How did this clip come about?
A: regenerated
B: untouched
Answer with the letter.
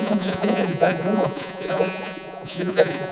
A